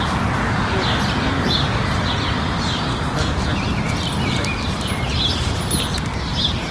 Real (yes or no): yes